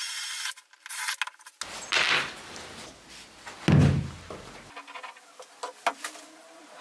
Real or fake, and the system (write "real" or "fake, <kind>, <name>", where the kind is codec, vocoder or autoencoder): real